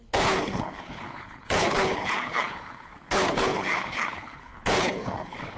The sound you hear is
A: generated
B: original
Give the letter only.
A